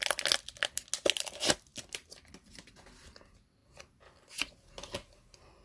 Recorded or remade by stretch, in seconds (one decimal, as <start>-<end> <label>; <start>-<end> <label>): 0.0-1.7 recorded; 1.7-2.7 remade; 2.7-5.6 recorded